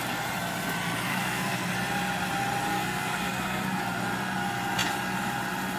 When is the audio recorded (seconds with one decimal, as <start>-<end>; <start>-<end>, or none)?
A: 0.0-1.1; 1.7-2.7; 3.8-5.8